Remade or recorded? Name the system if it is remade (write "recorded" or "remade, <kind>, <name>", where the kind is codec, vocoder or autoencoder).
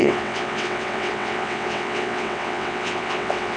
remade, vocoder, WaveNeXt